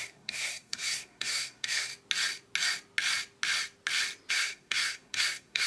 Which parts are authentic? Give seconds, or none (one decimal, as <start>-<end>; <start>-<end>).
1.9-4.3